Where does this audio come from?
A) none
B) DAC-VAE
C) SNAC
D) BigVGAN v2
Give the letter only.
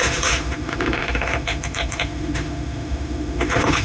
B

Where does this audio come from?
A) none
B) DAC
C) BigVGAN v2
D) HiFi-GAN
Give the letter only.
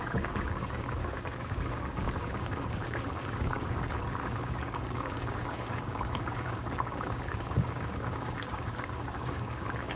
B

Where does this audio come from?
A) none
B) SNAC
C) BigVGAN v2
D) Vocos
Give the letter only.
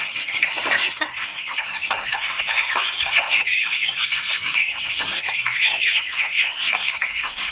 B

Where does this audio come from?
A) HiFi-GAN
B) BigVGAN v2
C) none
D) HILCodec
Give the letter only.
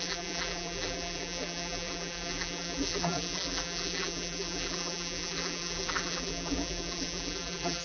B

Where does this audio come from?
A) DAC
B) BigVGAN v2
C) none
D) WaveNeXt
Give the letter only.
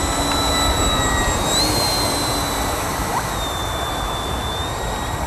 B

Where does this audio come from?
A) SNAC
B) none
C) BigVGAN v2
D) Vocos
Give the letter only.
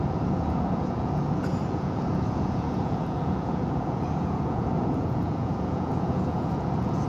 D